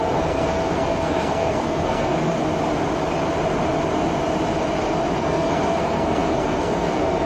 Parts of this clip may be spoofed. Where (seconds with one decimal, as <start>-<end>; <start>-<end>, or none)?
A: 0.0-2.4; 5.2-7.3